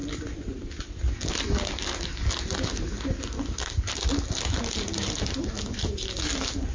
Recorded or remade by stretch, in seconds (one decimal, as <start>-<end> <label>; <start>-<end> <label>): 0.0-6.7 recorded